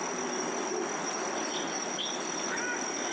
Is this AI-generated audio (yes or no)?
no